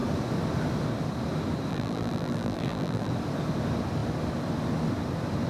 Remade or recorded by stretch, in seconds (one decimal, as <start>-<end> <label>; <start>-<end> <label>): 0.0-1.7 recorded; 1.7-3.1 remade; 3.1-5.5 recorded